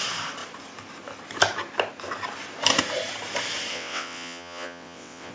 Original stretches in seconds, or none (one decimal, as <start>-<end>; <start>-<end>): 0.0-3.7